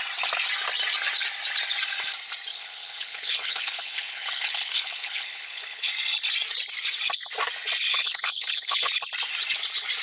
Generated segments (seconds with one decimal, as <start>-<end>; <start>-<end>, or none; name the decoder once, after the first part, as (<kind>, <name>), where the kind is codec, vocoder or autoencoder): 2.5-5.9 (codec, HILCodec); 7.9-8.9

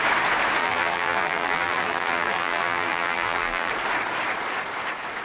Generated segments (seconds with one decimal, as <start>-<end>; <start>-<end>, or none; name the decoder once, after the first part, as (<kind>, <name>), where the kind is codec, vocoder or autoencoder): 0.6-3.7 (vocoder, BigVGAN v2)

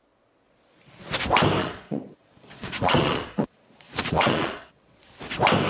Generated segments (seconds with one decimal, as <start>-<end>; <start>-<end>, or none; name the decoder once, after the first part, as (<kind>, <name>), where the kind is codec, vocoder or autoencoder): 1.6-5.0 (vocoder, Vocos)